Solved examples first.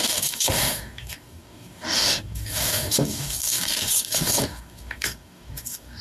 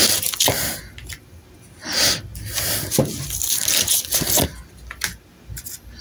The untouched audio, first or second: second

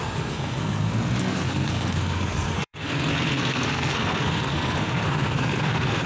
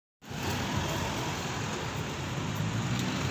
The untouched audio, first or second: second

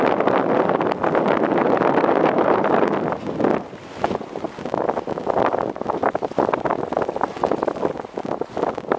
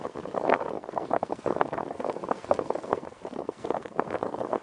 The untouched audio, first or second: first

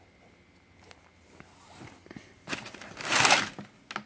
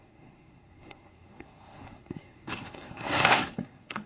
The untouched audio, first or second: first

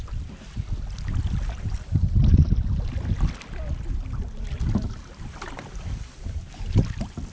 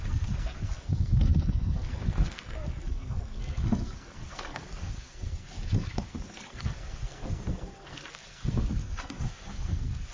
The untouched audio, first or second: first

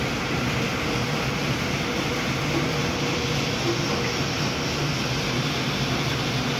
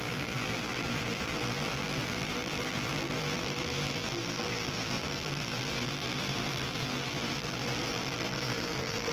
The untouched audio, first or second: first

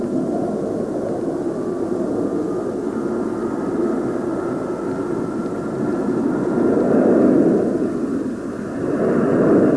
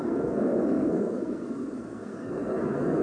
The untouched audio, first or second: first